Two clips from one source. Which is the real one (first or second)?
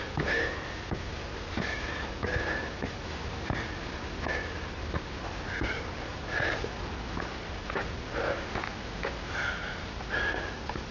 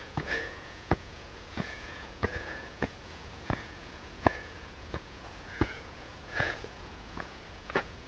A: first